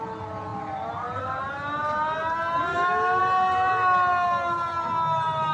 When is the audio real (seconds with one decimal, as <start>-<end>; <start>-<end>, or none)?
0.0-2.7; 3.2-5.5